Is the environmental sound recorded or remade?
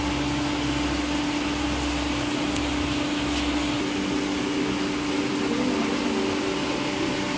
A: recorded